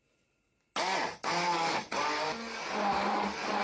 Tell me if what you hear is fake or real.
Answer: real